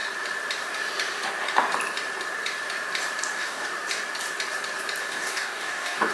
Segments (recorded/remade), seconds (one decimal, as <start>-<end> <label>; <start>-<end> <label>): 0.0-3.3 recorded; 3.3-3.7 remade; 3.7-5.0 recorded; 5.0-6.1 remade